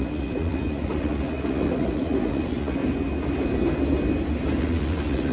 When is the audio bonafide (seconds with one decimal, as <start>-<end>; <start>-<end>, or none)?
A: 2.8-4.6